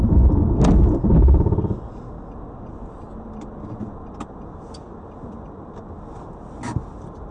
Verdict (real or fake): real